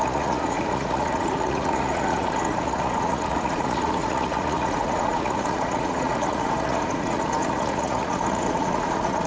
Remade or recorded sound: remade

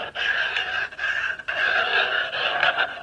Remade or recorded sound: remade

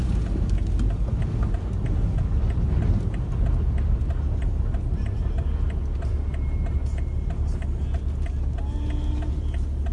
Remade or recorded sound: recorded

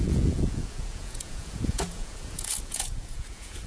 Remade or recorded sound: remade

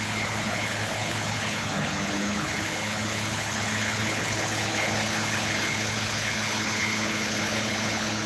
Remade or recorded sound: remade